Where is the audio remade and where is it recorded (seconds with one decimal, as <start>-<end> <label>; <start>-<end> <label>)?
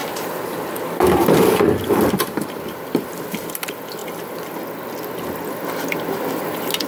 0.0-3.5 remade; 3.5-6.9 recorded